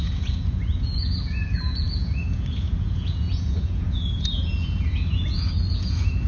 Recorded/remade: remade